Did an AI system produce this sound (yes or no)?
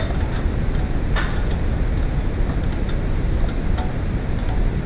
no